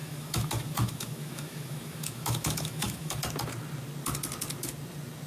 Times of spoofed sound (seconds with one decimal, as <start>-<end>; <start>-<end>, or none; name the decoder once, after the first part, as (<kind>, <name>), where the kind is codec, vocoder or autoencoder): 0.0-3.2 (autoencoder, DAC-VAE)